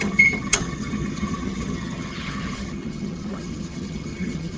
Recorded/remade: remade